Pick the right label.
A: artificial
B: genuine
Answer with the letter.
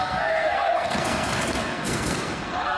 A